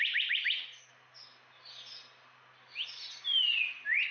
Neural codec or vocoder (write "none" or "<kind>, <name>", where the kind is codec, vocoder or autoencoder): none